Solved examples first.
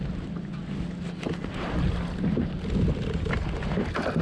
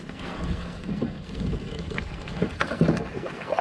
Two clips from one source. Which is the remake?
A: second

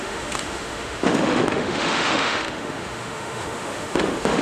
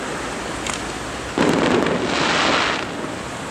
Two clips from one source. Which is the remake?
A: first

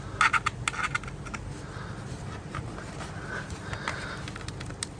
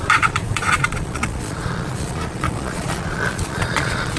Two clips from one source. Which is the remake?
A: second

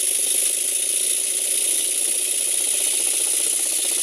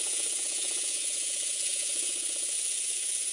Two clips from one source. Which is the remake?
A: second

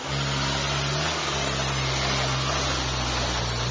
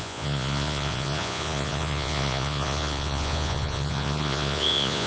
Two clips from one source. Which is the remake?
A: second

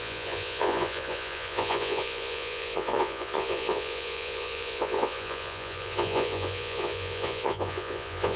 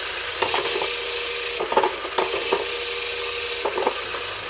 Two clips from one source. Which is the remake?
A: first